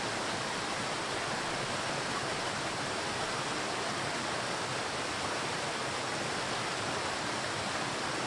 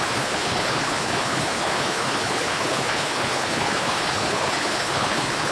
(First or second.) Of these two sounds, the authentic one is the first